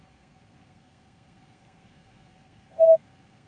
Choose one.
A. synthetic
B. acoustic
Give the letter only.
A